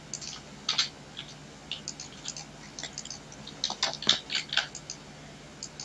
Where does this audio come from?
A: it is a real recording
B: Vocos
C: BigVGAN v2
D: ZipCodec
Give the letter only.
A